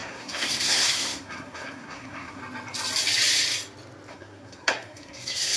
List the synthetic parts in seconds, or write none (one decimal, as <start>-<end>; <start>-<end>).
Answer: 0.0-2.4; 4.1-5.6